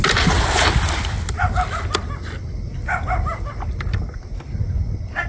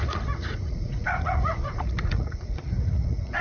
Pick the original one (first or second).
first